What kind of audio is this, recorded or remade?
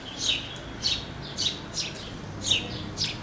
recorded